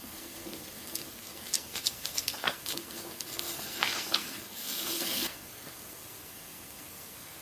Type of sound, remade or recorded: remade